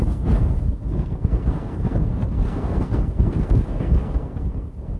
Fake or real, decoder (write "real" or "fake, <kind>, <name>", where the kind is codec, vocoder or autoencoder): fake, codec, SNAC